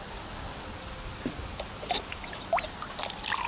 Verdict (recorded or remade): recorded